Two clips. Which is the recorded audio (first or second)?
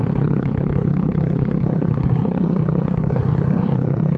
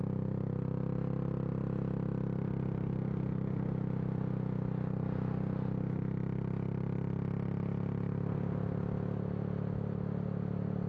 second